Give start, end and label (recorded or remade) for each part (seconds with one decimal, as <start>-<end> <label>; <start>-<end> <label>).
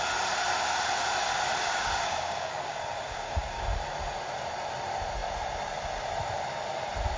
0.0-1.7 recorded; 1.7-3.6 remade; 3.6-7.2 recorded